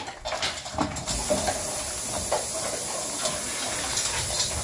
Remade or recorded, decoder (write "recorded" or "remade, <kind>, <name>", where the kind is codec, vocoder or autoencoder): recorded